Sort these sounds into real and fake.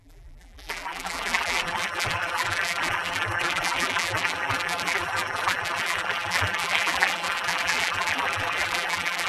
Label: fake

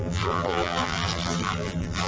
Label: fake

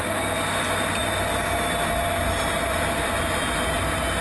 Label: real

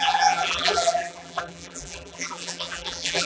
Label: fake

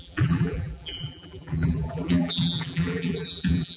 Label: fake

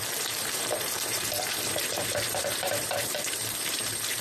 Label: fake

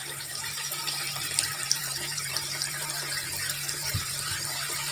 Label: fake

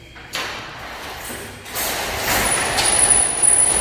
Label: real